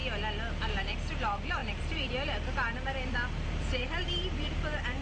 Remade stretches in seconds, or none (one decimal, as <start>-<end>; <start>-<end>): 0.6-5.0